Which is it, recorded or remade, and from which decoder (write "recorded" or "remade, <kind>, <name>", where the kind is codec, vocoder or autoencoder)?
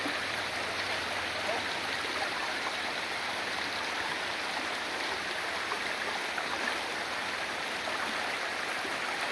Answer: recorded